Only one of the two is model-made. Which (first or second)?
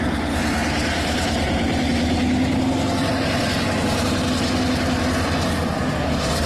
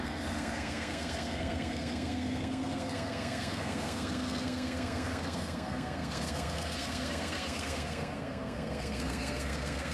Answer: second